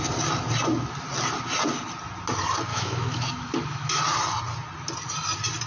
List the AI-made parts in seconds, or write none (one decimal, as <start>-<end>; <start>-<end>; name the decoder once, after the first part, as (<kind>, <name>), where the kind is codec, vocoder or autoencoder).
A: 2.7-3.9 (autoencoder, DAC-VAE)